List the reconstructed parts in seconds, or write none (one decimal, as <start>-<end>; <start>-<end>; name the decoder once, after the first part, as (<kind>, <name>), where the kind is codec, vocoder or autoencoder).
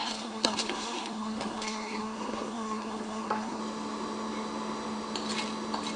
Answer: 0.0-3.6 (codec, SNAC)